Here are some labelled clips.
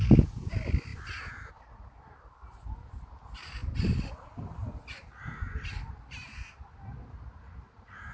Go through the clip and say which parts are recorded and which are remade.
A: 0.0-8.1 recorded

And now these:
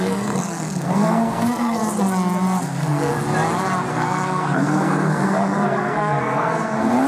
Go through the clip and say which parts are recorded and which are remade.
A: 0.0-1.8 remade; 1.8-2.6 recorded; 2.6-3.1 remade; 3.1-3.9 recorded; 3.9-7.1 remade

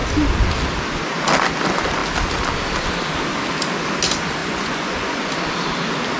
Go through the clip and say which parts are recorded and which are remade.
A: 0.0-4.4 recorded; 4.4-5.3 remade; 5.3-6.2 recorded

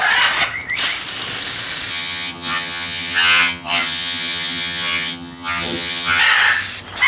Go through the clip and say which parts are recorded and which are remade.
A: 0.0-1.9 recorded; 1.9-6.2 remade; 6.2-7.1 recorded

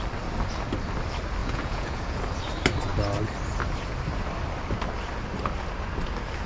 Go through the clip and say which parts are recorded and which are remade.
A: 0.0-1.4 recorded; 1.4-2.2 remade; 2.2-6.5 recorded

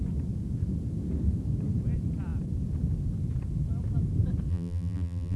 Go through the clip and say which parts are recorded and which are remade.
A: 0.0-4.5 recorded; 4.5-5.4 remade

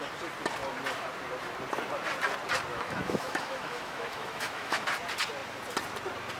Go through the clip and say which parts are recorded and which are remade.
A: 0.0-2.7 recorded; 2.7-4.9 remade; 4.9-6.4 recorded

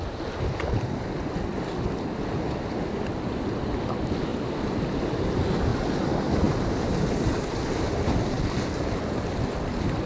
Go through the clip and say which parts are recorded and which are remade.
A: 0.0-10.1 recorded